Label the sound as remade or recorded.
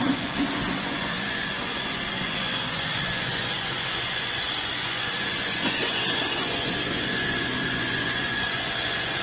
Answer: remade